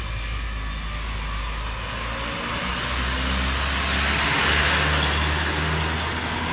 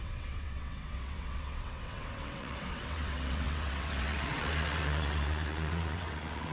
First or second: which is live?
first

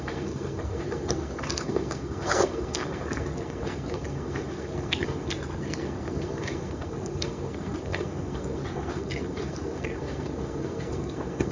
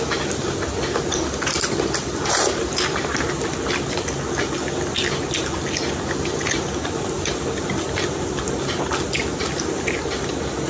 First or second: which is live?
second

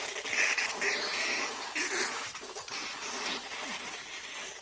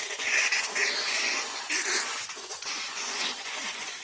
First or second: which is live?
first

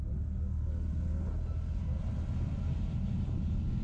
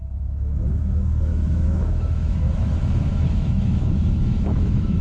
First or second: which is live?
first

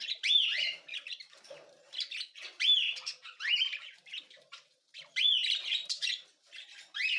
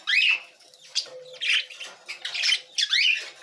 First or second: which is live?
second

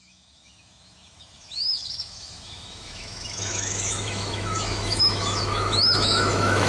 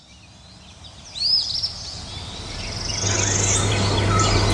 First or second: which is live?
second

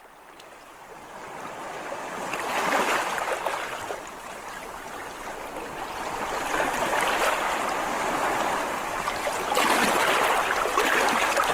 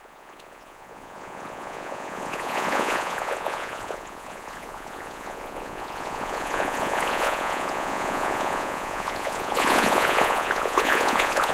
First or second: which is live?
first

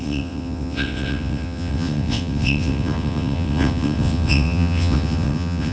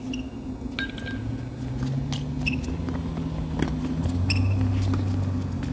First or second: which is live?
second